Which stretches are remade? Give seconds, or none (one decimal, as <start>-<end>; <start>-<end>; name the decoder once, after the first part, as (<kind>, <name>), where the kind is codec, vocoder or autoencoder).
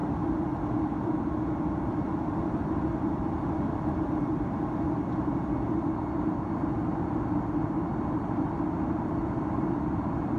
1.0-10.4 (vocoder, BigVGAN v2)